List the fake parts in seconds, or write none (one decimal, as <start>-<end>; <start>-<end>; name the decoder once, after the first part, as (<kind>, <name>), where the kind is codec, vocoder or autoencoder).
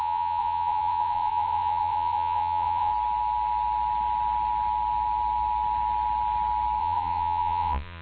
0.0-2.9 (vocoder, Vocos); 6.8-8.0